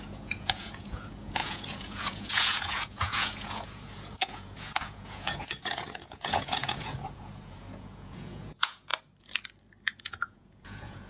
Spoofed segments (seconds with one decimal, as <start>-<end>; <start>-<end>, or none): 0.0-8.9; 10.0-11.1

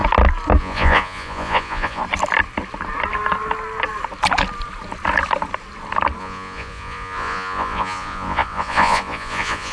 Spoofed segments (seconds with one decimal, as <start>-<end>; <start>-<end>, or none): 0.6-2.0; 6.2-9.7

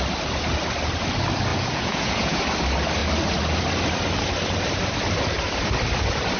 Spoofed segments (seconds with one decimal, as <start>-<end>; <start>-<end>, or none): 1.5-2.4

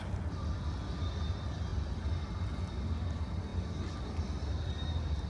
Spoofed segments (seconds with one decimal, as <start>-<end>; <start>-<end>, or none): none

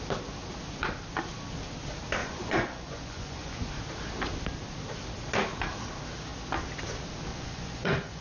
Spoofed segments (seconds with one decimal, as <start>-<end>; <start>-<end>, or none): 2.2-3.7; 7.3-8.2

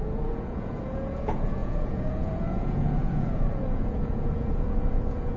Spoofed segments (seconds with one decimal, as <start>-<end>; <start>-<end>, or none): 0.0-5.4

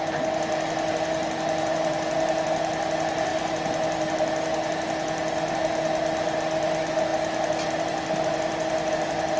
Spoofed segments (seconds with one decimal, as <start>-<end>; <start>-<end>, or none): none

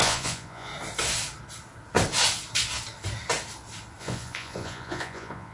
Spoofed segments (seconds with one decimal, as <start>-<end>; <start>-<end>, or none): 0.0-0.7; 4.0-5.5